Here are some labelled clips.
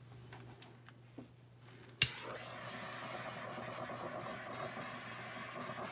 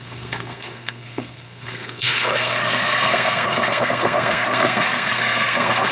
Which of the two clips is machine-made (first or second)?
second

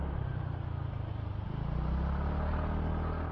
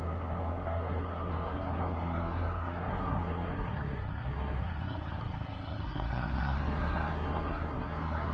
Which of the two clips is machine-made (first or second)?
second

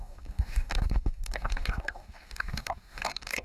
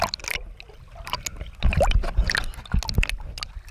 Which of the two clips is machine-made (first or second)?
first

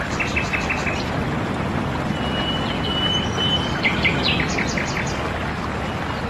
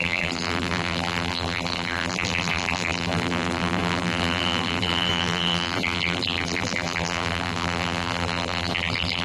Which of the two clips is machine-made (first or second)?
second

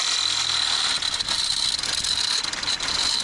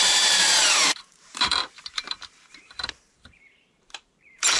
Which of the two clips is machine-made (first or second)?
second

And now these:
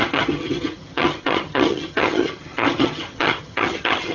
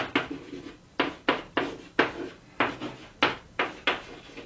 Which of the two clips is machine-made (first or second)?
first